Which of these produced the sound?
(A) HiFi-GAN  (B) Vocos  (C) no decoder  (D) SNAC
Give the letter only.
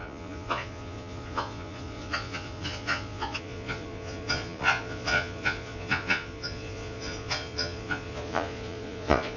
B